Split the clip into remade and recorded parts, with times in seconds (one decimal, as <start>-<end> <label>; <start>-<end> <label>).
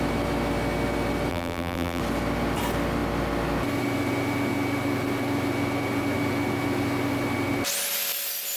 0.0-1.3 recorded; 1.3-2.0 remade; 2.0-8.6 recorded